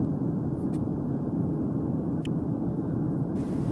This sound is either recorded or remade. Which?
recorded